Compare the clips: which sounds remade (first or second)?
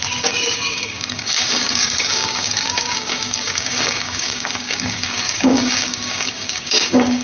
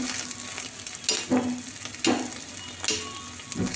first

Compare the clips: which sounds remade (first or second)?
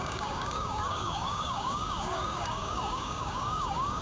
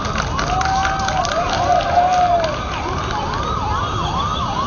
first